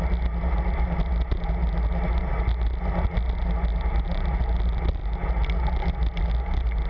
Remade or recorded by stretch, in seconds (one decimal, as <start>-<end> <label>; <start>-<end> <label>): 0.0-6.9 recorded